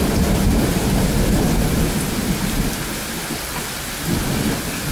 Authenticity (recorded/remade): recorded